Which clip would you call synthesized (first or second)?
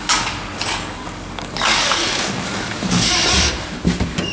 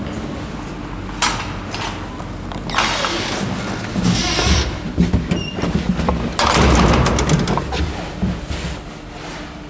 first